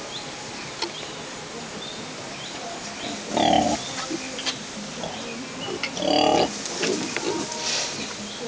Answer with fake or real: real